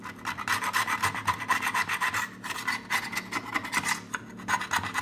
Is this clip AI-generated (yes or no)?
no